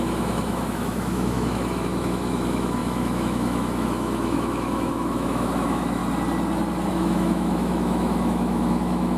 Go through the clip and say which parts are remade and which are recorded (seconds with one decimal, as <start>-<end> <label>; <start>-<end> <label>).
0.0-6.0 remade; 6.0-6.9 recorded; 6.9-9.2 remade